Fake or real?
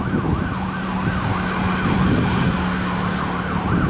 real